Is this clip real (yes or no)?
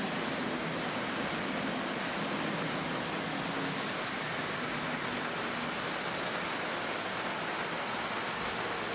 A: yes